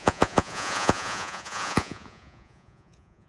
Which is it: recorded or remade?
remade